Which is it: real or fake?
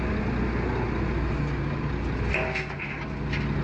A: real